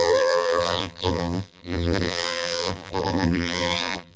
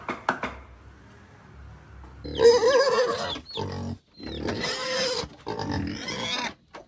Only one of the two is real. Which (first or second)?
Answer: second